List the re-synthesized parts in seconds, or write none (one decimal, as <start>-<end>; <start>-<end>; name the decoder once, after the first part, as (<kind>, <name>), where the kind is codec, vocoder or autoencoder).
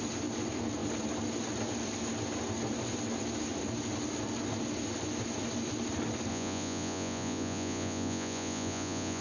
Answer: 6.3-9.2 (vocoder, Vocos)